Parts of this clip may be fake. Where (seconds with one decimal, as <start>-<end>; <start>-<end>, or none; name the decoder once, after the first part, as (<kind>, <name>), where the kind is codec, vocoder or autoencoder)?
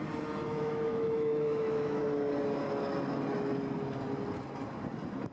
0.6-2.0 (autoencoder, DAC-VAE)